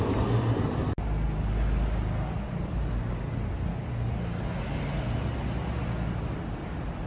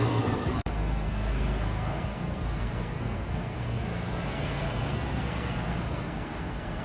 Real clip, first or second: first